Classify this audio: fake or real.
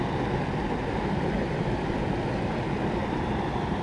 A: real